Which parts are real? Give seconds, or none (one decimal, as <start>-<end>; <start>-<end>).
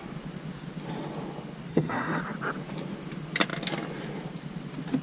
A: 0.0-1.7; 2.2-5.0